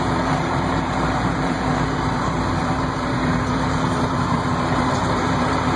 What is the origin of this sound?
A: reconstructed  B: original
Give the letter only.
A